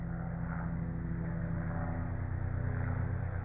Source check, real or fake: real